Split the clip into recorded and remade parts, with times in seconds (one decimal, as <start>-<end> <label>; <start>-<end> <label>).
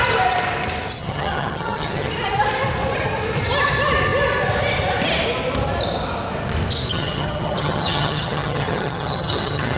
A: 0.0-1.0 recorded; 1.0-2.1 remade; 2.1-6.9 recorded; 6.9-9.8 remade